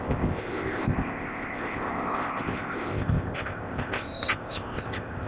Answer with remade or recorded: remade